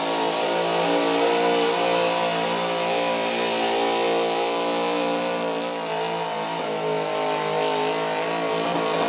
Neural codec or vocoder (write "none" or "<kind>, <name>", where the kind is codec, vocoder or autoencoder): none